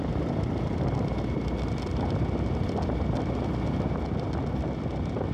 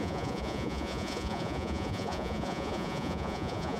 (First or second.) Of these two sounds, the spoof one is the second